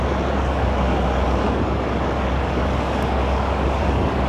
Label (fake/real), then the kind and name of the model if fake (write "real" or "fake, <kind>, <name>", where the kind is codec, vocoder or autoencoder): fake, codec, DAC